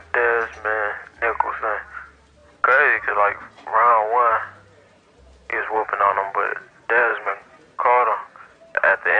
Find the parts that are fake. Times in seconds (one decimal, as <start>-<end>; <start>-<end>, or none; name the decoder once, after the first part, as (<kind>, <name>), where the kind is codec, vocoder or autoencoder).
5.5-6.4 (vocoder, BigVGAN v2); 7.1-7.8